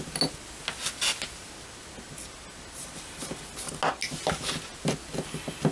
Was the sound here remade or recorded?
recorded